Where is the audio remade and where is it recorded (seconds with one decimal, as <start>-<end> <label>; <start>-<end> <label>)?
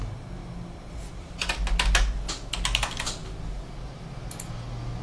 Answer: 0.0-5.0 recorded